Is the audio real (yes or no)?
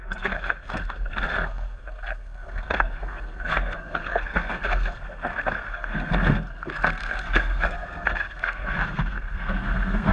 no